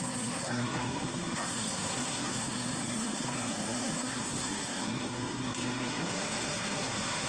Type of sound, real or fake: fake